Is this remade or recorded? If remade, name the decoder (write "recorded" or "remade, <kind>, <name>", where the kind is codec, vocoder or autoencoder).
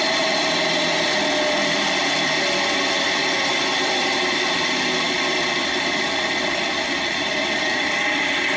recorded